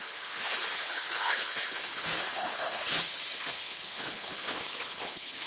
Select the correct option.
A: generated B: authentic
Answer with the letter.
A